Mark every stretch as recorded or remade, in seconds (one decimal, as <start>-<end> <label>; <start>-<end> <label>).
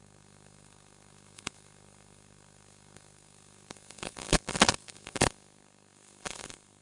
0.0-6.8 remade